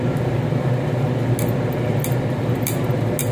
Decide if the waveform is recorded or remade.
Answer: recorded